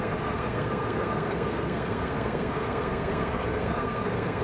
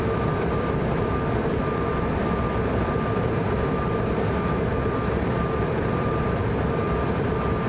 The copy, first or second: first